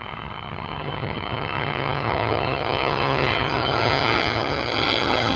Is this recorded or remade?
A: remade